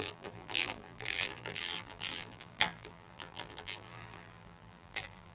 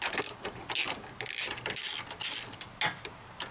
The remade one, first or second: first